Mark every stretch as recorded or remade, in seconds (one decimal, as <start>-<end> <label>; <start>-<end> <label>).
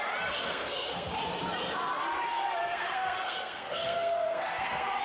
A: 0.0-0.5 recorded; 0.5-1.1 remade; 1.1-2.3 recorded; 2.3-5.0 remade